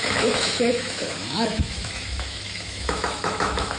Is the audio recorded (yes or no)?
no